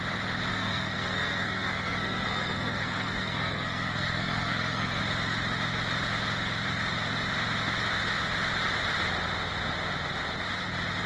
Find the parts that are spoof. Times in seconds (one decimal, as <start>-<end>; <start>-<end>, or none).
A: 0.5-5.0